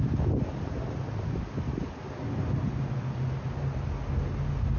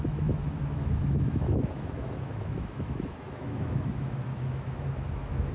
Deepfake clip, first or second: second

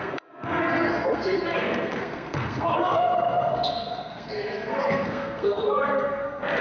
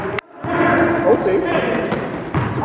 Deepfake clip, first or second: first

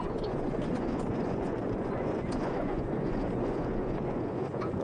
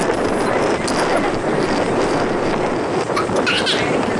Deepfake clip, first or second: first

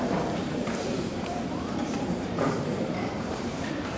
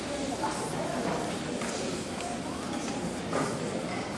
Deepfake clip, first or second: first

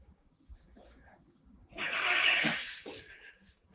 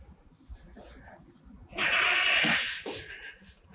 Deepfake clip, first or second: first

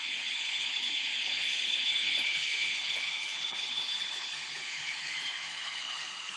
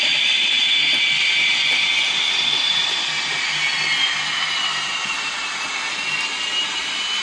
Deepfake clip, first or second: first